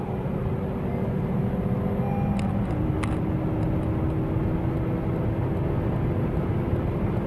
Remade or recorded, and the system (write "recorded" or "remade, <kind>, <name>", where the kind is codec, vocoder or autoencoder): recorded